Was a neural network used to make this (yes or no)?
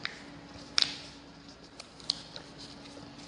no